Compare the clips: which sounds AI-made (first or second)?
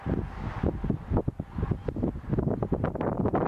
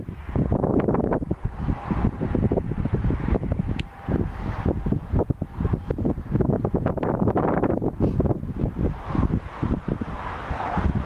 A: second